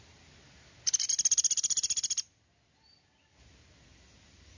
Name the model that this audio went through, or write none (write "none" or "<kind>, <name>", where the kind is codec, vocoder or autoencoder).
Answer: none